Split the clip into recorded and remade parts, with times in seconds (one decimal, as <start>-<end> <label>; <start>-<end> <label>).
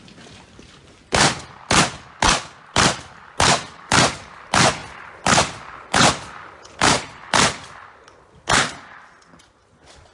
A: 0.0-10.1 recorded